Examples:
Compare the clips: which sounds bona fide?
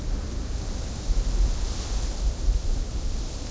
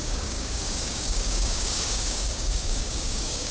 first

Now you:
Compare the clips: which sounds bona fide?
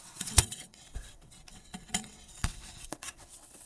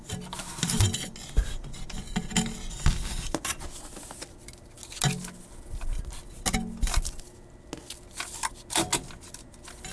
second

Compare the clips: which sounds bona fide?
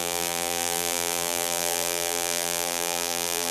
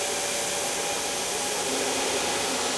second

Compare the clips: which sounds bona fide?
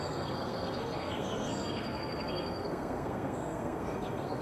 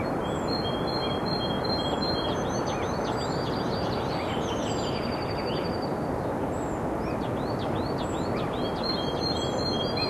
second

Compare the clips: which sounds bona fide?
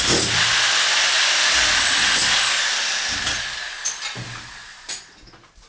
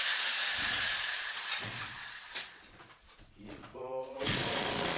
first